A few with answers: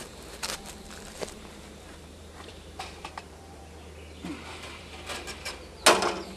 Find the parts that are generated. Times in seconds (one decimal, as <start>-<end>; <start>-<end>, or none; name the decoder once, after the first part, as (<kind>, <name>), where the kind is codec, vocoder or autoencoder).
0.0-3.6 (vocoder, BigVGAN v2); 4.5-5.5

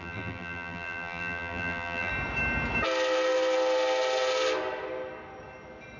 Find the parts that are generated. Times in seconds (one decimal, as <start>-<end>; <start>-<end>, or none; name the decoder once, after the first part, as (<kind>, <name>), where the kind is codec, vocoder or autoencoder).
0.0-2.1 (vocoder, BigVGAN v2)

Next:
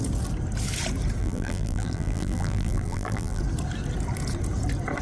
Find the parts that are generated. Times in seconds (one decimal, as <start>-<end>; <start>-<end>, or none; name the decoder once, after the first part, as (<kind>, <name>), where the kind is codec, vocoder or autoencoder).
1.2-3.4 (vocoder, BigVGAN v2)

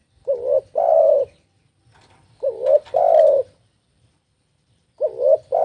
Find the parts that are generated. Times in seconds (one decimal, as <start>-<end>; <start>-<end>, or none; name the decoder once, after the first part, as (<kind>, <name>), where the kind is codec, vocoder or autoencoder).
0.0-5.6 (vocoder, BigVGAN v2)

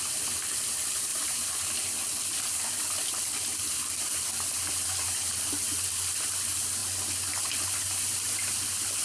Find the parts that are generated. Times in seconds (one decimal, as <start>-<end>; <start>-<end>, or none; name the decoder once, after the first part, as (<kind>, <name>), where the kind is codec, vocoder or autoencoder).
0.0-1.1 (vocoder, BigVGAN v2); 4.7-9.0